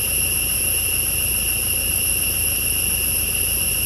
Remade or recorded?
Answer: recorded